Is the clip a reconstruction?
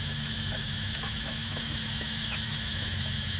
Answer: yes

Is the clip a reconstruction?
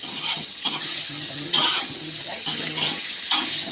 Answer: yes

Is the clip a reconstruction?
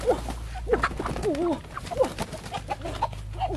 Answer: no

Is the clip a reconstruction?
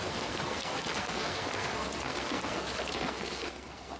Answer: yes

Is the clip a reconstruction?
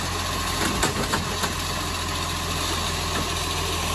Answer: no